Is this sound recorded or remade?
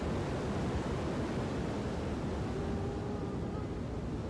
recorded